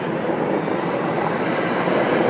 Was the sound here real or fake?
real